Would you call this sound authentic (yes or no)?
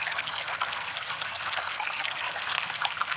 no